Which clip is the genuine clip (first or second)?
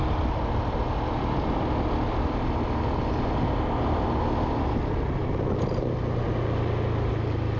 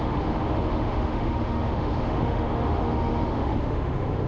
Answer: first